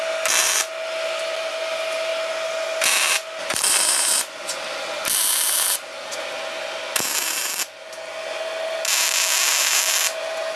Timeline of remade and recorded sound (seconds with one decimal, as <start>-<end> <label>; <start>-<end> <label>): 0.0-10.6 recorded